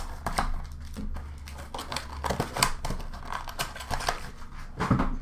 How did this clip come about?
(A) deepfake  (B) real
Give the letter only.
B